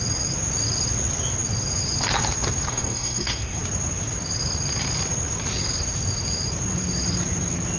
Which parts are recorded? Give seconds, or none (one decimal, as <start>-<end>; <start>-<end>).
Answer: 0.0-2.7; 3.6-7.8